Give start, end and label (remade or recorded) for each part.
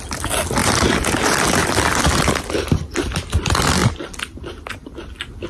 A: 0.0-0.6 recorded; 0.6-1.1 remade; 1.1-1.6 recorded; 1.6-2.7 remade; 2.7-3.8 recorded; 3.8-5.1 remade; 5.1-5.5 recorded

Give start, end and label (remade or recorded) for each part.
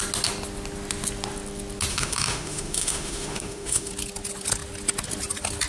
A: 0.0-1.9 recorded; 1.9-3.9 remade; 3.9-5.7 recorded